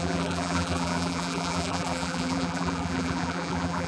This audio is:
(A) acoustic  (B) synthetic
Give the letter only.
B